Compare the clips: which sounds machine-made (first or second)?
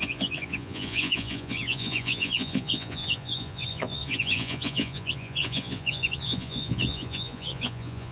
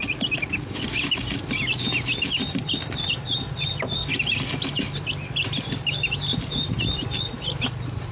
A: first